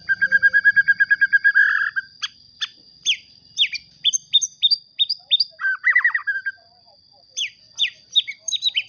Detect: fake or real fake